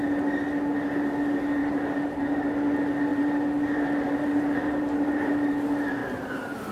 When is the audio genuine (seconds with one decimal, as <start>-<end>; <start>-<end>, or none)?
0.0-1.6; 2.2-3.1; 5.5-6.7